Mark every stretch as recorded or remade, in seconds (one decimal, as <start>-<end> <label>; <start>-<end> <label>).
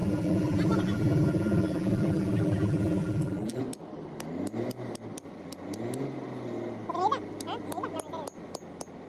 0.0-3.6 remade; 3.6-9.1 recorded